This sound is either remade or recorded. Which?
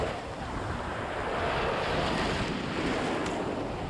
recorded